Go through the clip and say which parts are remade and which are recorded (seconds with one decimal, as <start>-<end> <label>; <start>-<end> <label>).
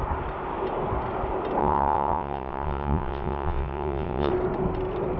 0.0-1.6 recorded; 1.6-4.3 remade; 4.3-5.2 recorded